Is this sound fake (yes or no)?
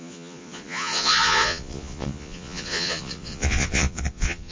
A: yes